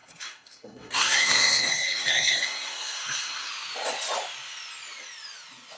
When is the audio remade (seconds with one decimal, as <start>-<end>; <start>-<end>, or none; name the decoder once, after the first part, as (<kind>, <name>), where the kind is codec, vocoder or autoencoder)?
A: 0.0-3.5 (codec, SNAC)